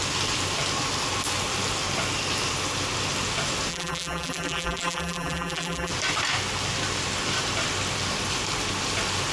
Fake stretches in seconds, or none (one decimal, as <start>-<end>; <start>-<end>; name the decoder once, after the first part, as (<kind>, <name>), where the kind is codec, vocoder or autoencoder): 3.7-5.9 (vocoder, BigVGAN v2)